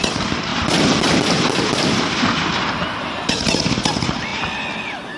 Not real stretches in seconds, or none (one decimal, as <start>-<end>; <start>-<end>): 0.5-3.3; 4.3-5.2